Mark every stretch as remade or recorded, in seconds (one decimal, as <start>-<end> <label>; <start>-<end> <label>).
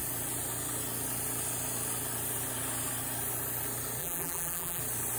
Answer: 0.0-4.0 recorded; 4.0-4.8 remade; 4.8-5.2 recorded